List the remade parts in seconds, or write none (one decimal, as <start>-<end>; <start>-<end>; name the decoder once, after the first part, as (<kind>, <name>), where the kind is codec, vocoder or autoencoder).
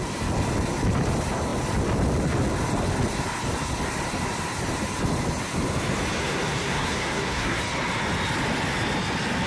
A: 6.2-7.6 (codec, SNAC)